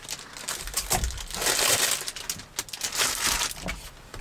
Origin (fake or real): real